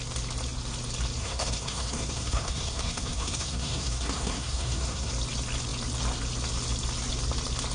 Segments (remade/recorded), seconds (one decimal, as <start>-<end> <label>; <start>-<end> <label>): 0.0-1.2 recorded; 1.2-5.1 remade; 5.1-7.7 recorded